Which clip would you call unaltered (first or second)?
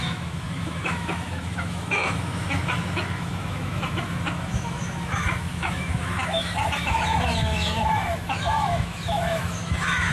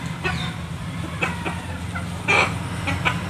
second